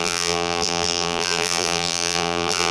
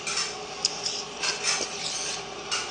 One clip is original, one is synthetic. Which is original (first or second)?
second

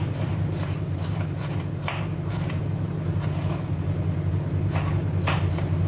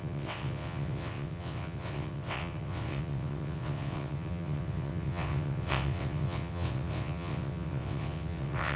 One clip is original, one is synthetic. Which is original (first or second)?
first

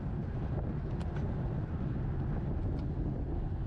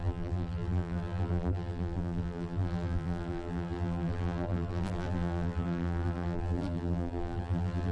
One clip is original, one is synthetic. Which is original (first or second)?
first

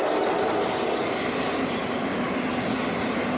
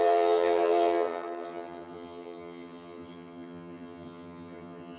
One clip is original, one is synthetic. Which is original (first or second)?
first